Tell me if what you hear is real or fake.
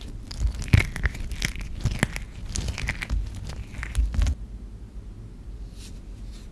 real